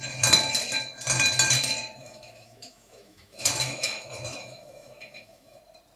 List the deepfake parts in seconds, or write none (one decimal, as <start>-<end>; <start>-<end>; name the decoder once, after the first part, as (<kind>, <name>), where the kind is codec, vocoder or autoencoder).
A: 2.0-5.6 (autoencoder, DAC-VAE)